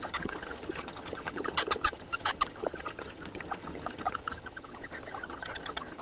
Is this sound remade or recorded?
remade